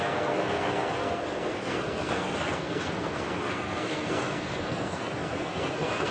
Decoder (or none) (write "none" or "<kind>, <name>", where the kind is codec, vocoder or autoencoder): codec, SNAC